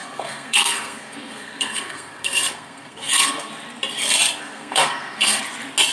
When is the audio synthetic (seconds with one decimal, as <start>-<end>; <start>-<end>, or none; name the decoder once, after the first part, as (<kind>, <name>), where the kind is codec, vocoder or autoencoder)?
0.0-3.5 (codec, SNAC); 4.4-5.4

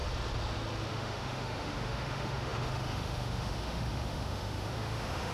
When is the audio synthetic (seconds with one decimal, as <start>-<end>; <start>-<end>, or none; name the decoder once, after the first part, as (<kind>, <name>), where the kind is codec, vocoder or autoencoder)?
0.9-5.3 (autoencoder, DAC-VAE)

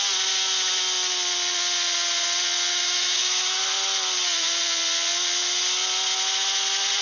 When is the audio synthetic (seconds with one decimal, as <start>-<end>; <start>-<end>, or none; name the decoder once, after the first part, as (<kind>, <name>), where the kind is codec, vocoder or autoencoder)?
2.7-3.6 (autoencoder, DAC-VAE)

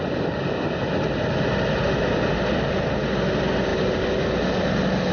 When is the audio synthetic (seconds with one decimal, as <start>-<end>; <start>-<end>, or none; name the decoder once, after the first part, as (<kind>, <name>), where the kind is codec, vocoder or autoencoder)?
none